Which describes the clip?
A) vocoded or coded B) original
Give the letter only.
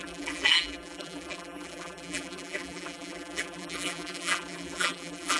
A